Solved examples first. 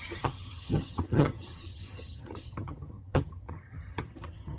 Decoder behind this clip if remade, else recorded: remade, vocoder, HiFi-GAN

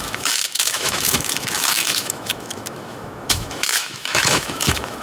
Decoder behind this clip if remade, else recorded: remade, autoencoder, DAC-VAE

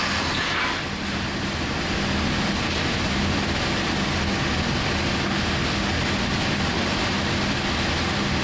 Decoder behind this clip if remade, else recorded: recorded